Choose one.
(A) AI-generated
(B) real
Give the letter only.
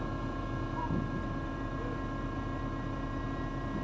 B